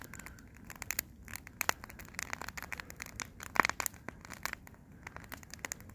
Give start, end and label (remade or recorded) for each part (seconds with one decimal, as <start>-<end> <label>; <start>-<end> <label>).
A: 0.0-5.9 recorded